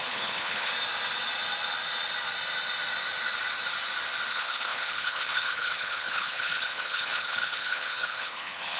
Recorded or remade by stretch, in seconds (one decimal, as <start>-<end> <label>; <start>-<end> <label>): 0.0-0.7 remade; 0.7-4.3 recorded; 4.3-8.8 remade